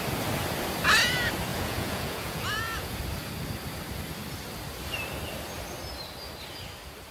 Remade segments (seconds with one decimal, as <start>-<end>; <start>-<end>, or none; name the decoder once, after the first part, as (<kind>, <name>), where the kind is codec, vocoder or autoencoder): 1.5-3.0 (vocoder, Vocos)